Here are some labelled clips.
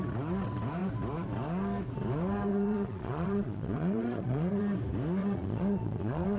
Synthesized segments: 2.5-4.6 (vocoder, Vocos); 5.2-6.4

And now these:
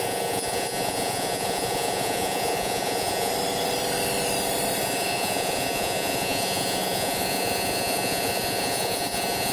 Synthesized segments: 0.0-3.3 (vocoder, Vocos); 4.8-9.5

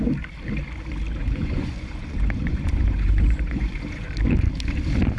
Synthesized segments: 1.2-4.1 (vocoder, Vocos)

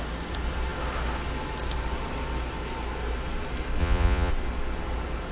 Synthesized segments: 3.8-4.3 (vocoder, Vocos)

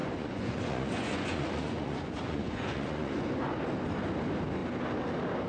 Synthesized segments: 0.0-3.3 (vocoder, Vocos)

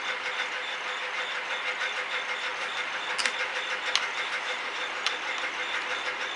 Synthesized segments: none